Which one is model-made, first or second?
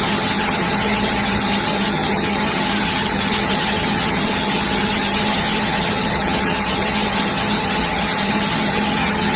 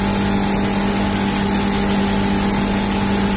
first